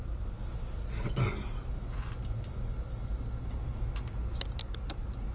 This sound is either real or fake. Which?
real